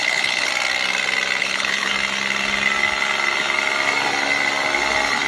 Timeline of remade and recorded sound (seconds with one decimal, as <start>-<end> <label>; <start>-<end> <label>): 0.0-0.5 remade; 0.5-1.4 recorded; 1.4-1.9 remade; 1.9-5.3 recorded